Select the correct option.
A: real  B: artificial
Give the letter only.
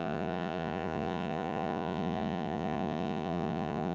B